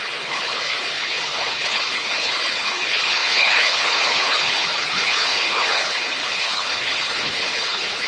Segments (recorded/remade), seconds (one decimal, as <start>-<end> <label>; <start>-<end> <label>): 0.0-8.1 remade

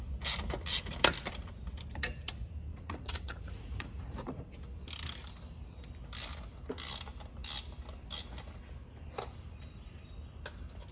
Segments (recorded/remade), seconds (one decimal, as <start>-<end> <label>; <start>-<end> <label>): 0.0-2.7 recorded; 2.7-4.4 remade; 4.4-10.9 recorded

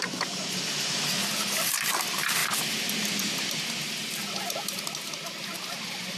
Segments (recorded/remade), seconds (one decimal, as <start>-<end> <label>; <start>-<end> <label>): 0.0-6.2 recorded

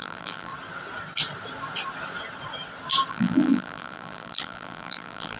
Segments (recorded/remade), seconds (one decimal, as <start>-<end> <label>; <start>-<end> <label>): 0.0-0.5 remade; 0.5-3.1 recorded; 3.1-5.4 remade

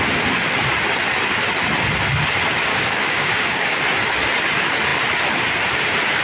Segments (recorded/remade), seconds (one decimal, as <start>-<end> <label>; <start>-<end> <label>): 0.0-2.7 recorded; 2.7-3.8 remade; 3.8-6.2 recorded

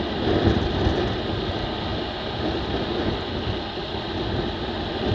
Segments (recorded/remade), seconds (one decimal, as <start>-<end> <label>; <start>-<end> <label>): 0.0-5.1 recorded

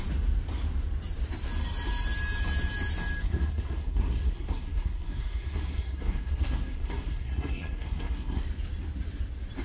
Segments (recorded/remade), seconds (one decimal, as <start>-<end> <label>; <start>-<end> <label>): 0.0-3.2 recorded; 3.2-8.4 remade; 8.4-9.6 recorded

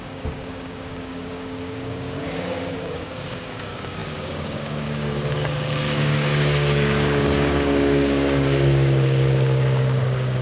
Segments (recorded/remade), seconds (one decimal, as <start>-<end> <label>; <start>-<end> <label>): 0.0-10.4 remade